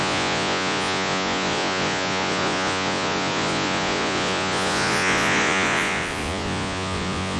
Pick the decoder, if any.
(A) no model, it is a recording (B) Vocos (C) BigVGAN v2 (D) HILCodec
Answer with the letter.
B